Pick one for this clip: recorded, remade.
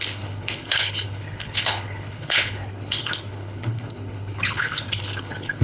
remade